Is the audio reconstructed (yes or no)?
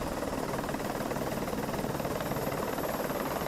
no